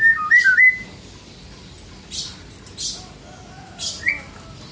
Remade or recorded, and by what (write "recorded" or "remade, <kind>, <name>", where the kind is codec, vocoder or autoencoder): recorded